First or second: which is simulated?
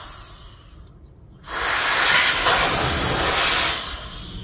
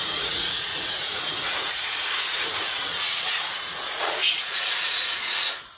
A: second